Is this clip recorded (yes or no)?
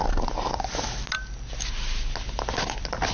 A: yes